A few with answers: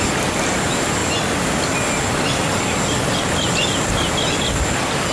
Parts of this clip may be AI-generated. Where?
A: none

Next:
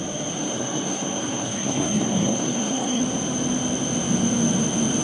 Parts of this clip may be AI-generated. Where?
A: 0.4-3.0 (codec, SNAC)